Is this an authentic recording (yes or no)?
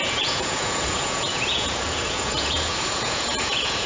no